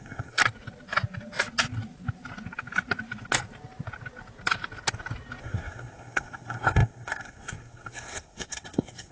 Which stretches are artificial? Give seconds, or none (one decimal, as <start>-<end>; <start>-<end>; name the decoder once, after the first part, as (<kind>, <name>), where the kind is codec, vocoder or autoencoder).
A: 0.0-0.4 (codec, SNAC); 5.4-9.1